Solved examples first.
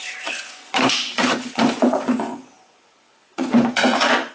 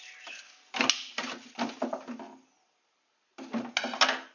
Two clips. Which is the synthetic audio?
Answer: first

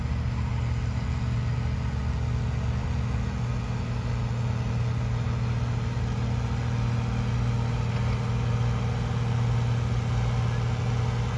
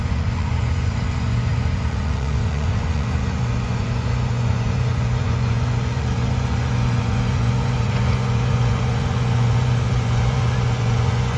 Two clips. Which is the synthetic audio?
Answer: second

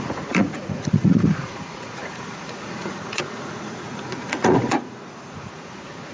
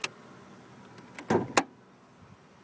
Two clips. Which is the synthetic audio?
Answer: first